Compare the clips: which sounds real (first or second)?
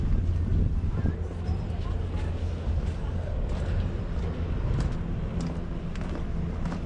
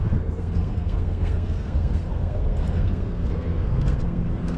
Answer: first